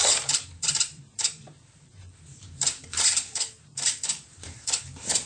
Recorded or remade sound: remade